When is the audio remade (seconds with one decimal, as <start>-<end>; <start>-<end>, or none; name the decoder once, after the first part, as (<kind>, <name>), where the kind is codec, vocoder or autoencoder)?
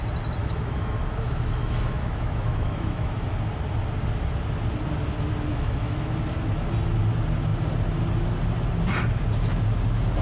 0.4-3.3 (autoencoder, DAC-VAE); 5.5-6.1